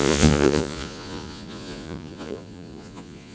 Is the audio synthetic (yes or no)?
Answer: yes